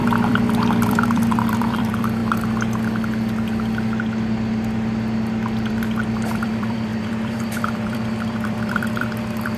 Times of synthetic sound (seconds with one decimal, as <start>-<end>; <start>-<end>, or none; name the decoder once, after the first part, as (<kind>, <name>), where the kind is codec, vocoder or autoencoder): 0.0-2.2 (vocoder, BigVGAN v2); 5.7-9.6